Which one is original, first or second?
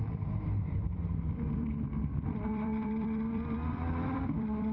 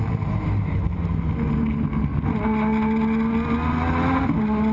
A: second